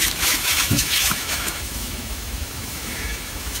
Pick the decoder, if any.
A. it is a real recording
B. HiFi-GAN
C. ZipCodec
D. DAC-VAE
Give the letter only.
D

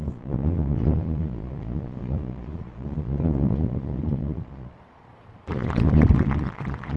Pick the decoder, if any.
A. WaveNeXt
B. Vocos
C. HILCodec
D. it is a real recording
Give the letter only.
B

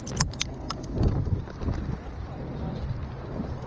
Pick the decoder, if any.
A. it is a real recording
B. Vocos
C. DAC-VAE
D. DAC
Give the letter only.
A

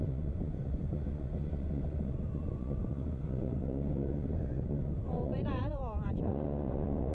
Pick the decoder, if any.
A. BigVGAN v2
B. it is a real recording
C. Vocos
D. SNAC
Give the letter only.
C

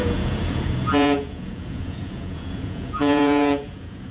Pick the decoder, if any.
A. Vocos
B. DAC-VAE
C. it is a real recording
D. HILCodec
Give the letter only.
A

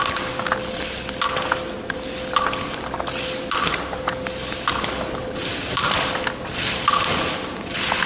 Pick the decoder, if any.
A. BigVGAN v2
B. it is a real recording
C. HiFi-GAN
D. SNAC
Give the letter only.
B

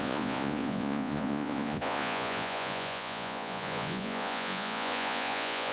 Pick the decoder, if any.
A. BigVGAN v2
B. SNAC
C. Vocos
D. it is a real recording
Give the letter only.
C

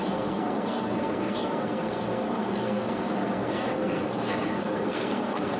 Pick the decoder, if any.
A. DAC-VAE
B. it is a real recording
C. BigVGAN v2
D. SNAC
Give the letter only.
D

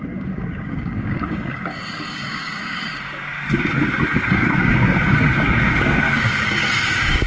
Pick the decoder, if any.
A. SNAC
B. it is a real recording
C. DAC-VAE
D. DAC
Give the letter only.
D